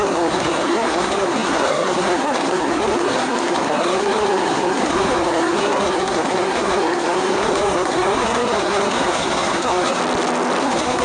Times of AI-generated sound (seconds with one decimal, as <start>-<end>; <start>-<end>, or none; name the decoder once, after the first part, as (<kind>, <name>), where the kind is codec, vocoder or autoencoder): 0.0-10.0 (codec, SNAC); 10.6-11.0